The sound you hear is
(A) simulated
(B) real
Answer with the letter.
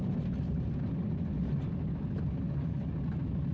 B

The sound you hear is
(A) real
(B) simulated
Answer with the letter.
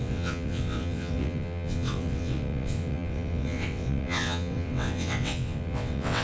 B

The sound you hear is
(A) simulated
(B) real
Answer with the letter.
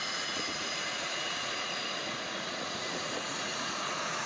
A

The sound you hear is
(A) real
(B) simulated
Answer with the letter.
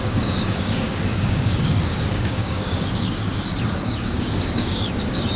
B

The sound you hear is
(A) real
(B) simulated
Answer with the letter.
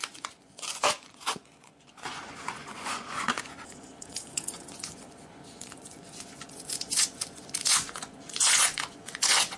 B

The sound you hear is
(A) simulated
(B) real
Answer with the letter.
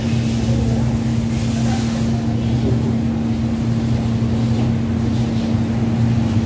B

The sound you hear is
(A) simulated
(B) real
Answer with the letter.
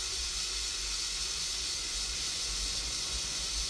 A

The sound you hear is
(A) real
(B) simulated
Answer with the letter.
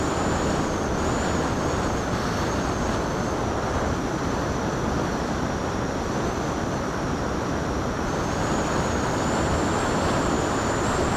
A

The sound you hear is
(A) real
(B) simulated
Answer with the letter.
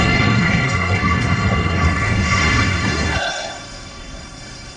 B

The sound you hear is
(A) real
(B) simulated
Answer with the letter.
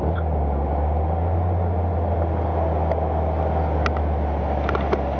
A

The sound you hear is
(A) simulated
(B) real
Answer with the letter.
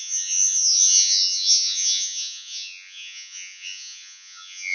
A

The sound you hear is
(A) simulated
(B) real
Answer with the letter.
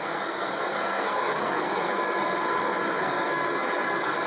A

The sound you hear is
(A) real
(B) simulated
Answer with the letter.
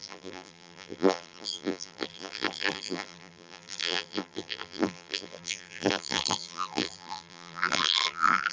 B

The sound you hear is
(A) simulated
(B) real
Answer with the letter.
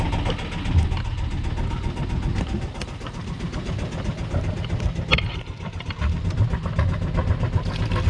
B